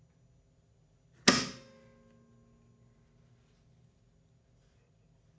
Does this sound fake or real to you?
real